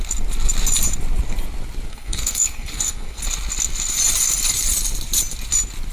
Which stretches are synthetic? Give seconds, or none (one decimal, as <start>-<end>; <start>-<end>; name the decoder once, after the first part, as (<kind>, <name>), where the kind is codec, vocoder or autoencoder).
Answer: 1.9-3.2 (codec, SNAC)